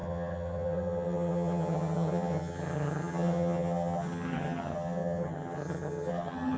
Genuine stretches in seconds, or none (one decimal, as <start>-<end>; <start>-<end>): none